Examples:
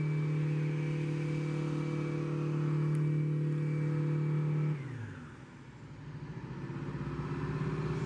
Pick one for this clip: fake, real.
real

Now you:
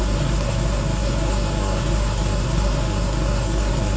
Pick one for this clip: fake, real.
fake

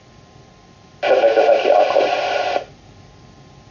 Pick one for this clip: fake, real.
real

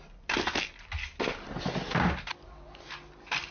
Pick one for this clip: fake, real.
real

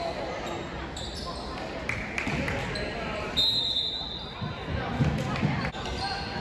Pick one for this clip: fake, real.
real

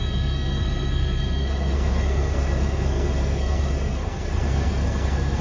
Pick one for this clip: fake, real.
fake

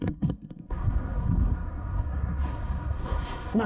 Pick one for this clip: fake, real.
fake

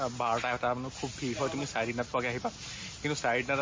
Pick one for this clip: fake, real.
real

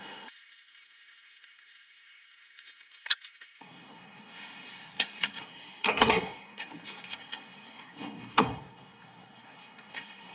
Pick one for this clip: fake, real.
fake